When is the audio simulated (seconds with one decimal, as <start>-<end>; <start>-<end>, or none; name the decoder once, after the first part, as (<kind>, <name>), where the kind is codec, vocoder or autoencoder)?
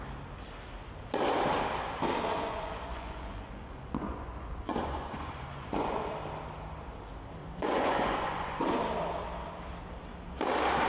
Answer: 2.3-6.1 (vocoder, Vocos); 7.4-8.8